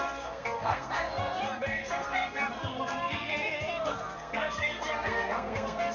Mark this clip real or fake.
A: fake